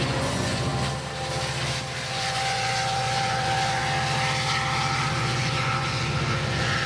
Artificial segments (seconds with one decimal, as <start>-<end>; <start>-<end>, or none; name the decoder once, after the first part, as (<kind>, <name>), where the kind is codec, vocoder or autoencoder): 0.0-0.7 (vocoder, Vocos); 2.1-3.8; 5.1-6.9